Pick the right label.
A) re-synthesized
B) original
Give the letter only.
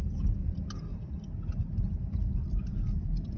B